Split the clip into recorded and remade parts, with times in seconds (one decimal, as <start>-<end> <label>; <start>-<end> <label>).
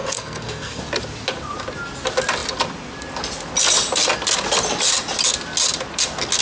0.0-0.8 remade; 0.8-6.4 recorded